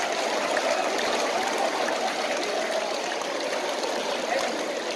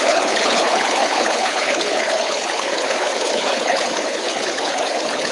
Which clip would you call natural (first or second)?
first